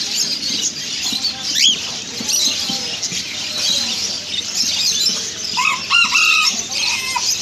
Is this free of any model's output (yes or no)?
yes